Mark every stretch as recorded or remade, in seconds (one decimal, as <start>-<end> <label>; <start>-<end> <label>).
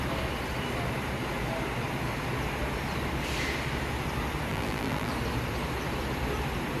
0.0-4.5 recorded; 4.5-5.1 remade; 5.1-6.8 recorded